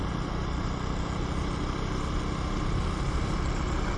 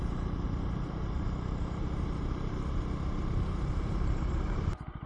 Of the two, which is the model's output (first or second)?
second